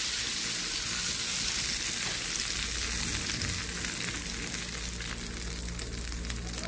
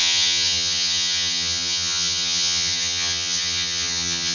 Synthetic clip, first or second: second